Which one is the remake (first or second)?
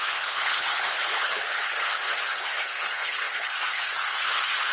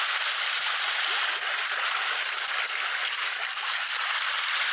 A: first